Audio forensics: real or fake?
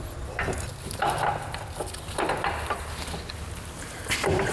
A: real